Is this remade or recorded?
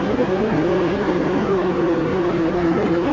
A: remade